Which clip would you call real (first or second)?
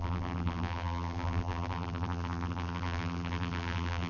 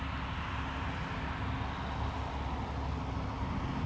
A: second